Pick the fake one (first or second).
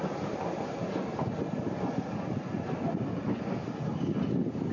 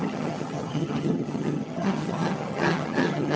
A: second